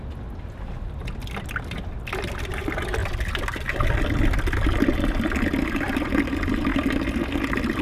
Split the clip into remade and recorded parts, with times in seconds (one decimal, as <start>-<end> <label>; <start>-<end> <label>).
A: 0.0-7.8 recorded